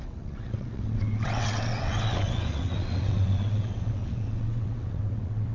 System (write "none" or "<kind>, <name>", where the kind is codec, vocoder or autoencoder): vocoder, WaveNeXt